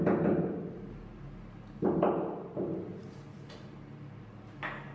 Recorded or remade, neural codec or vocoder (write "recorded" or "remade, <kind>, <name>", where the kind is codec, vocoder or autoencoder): recorded